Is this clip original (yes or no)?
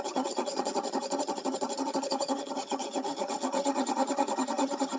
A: no